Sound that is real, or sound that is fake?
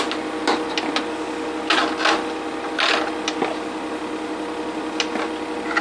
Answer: real